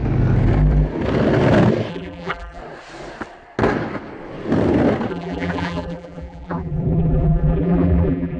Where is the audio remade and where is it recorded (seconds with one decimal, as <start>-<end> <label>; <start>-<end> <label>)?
0.0-1.9 recorded; 1.9-2.6 remade; 2.6-5.1 recorded; 5.1-8.4 remade